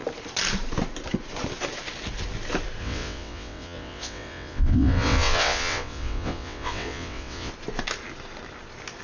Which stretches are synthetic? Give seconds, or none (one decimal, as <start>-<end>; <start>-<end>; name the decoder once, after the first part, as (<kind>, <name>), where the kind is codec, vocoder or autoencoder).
2.8-7.5 (vocoder, WaveNeXt)